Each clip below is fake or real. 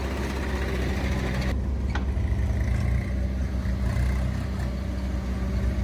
real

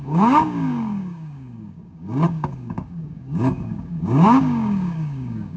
fake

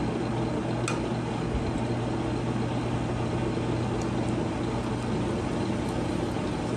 real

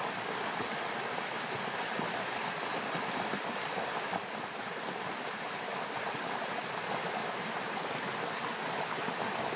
real